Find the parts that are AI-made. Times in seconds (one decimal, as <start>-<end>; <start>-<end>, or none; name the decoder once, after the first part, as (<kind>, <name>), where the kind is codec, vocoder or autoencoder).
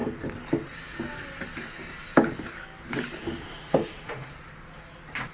3.2-4.3 (autoencoder, DAC-VAE)